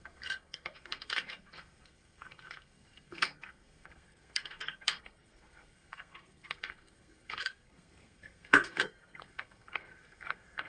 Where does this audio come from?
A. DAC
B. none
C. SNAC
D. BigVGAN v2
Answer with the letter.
C